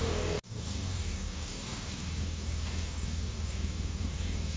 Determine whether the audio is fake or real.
fake